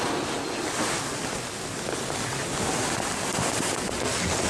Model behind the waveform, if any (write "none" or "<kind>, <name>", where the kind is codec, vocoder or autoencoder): none